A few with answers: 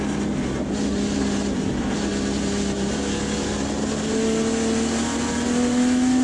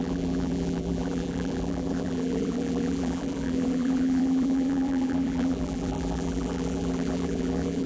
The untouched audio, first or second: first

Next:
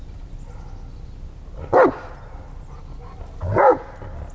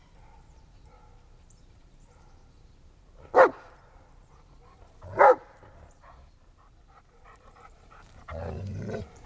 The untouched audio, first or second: first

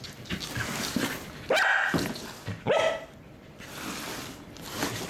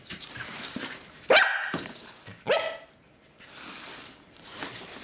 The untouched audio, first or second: first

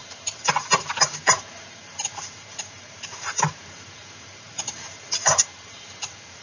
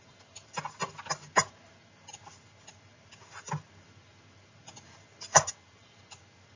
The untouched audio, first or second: second